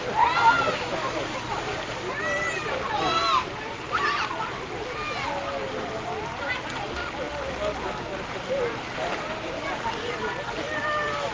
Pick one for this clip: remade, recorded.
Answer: recorded